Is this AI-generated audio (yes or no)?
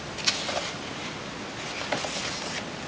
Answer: no